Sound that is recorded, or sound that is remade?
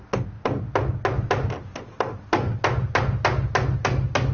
recorded